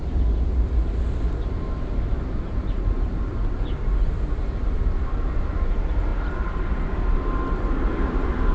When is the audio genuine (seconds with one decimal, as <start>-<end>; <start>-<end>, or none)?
0.0-8.5